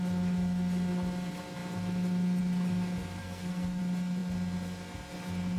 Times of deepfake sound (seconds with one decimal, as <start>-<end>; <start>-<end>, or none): 3.2-3.8